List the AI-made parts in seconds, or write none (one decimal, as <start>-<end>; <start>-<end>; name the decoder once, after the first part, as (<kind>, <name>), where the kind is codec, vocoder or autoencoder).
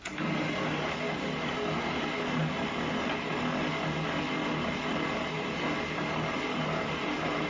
none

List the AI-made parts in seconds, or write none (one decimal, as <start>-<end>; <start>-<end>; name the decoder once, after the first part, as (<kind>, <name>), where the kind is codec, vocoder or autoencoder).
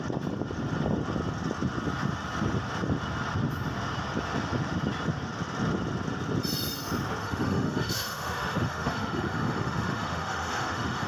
7.2-11.1 (autoencoder, DAC-VAE)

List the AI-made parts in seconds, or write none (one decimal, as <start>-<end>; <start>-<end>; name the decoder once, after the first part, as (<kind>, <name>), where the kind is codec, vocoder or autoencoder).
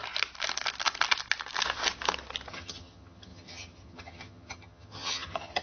2.5-5.6 (vocoder, HiFi-GAN)